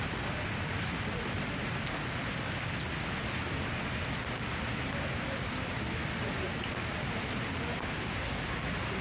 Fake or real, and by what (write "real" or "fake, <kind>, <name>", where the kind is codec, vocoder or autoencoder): real